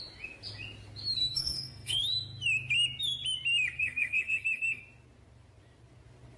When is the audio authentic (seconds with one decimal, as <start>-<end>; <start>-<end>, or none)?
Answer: 0.0-1.2; 2.0-3.8; 4.8-6.4

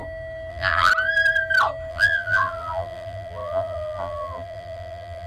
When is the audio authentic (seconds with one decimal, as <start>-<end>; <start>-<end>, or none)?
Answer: 0.0-0.5; 0.9-1.9

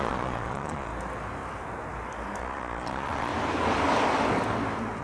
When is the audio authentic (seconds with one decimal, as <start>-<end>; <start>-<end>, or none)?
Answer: 0.9-2.4; 3.3-5.0

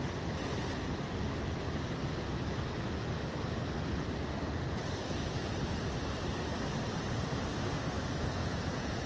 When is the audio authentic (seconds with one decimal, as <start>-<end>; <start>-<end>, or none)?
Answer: 0.0-8.4

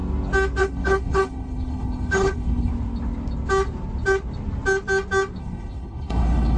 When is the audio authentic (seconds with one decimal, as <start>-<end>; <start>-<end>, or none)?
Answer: 0.0-0.6; 2.7-5.4

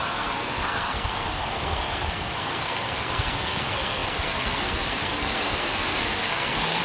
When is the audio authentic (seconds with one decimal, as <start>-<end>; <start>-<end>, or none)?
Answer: none

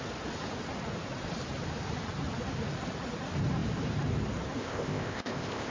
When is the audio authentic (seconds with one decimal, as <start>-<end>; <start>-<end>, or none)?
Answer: 0.0-4.6